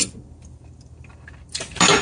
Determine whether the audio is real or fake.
real